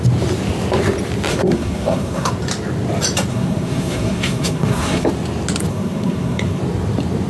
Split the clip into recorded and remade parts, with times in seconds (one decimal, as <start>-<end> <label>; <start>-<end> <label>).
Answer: 0.0-1.3 recorded; 1.3-2.3 remade; 2.3-3.3 recorded; 3.3-5.1 remade; 5.1-5.7 recorded; 5.7-6.6 remade; 6.6-7.3 recorded